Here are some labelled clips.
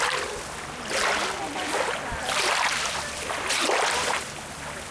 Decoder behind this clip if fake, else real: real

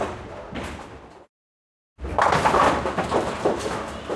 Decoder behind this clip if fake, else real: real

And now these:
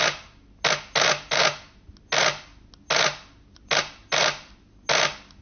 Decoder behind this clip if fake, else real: real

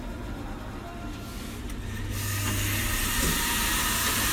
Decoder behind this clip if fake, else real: real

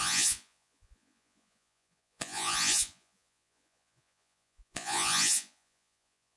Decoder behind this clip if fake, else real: fake, vocoder, Vocos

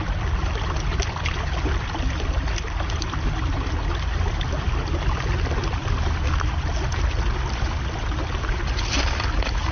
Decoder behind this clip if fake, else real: real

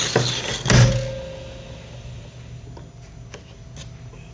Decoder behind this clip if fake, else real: real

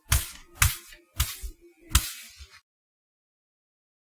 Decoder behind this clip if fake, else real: real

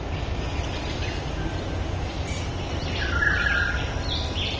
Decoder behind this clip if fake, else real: real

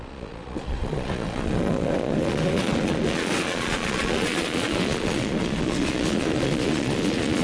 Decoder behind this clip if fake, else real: fake, vocoder, Vocos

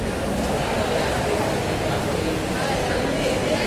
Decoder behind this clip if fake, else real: real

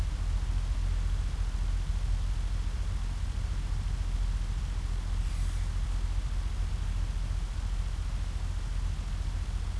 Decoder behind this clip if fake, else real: real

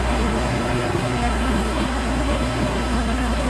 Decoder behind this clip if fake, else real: fake, codec, SNAC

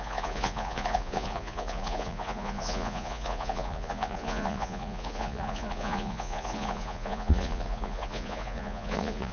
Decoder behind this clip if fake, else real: fake, vocoder, Vocos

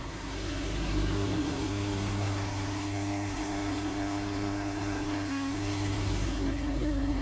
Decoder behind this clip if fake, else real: fake, codec, SNAC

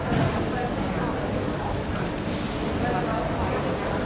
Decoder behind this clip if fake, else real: real